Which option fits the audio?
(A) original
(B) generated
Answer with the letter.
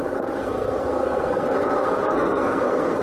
B